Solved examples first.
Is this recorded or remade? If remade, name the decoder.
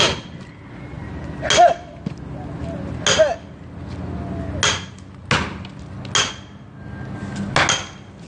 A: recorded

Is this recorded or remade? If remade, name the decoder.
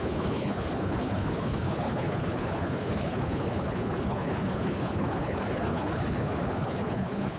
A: remade, codec, HILCodec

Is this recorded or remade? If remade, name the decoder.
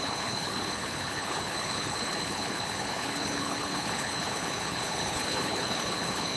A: remade, codec, HILCodec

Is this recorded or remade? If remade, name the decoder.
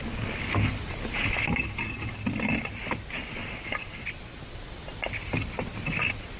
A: remade, vocoder, BigVGAN v2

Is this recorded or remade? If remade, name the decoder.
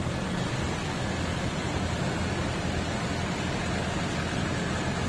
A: recorded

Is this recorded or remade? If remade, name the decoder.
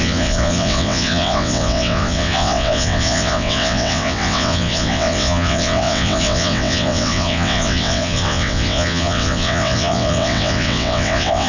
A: remade, vocoder, WaveNeXt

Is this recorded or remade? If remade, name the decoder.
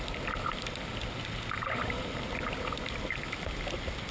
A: recorded